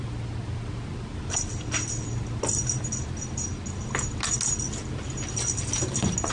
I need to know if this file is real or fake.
real